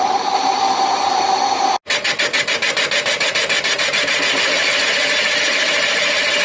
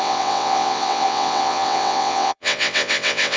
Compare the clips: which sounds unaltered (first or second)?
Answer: first